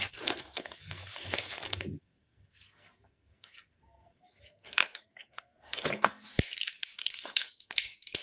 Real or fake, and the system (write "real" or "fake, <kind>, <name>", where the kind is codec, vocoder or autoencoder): fake, codec, SNAC